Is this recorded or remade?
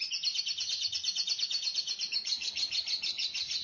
recorded